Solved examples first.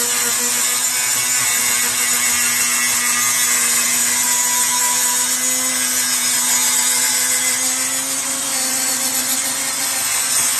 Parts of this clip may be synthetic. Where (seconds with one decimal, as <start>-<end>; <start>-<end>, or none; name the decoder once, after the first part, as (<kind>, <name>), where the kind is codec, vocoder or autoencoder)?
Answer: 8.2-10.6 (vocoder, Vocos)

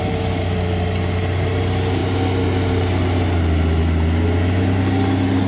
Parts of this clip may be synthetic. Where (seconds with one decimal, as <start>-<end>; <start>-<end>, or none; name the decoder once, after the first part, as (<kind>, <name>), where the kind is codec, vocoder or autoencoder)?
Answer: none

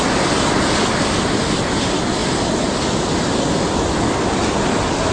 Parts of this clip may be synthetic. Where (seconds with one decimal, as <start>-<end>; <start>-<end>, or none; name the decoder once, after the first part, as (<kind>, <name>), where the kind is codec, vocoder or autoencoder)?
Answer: none